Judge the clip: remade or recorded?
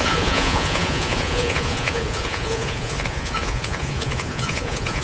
remade